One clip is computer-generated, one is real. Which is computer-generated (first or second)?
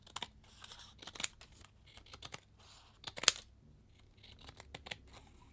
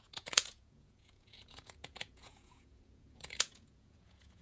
second